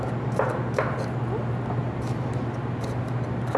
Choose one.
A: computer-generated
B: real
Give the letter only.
B